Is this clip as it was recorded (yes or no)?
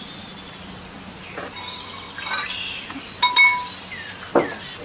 yes